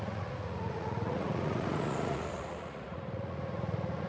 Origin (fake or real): fake